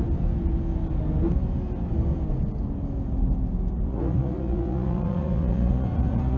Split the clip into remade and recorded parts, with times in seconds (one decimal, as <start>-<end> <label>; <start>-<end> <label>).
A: 0.0-3.9 recorded; 3.9-6.4 remade